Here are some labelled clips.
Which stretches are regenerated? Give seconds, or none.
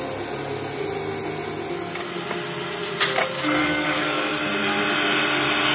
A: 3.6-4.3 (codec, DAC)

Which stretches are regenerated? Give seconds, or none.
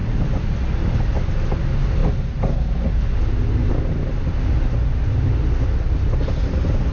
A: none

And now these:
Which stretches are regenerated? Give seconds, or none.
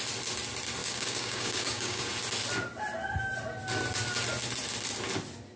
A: 0.8-2.1 (codec, DAC)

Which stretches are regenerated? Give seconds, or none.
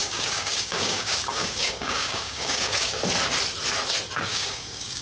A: 0.0-3.0 (codec, DAC); 4.3-5.0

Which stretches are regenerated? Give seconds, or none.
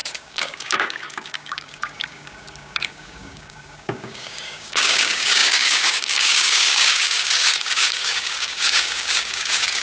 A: 0.0-9.8 (codec, DAC)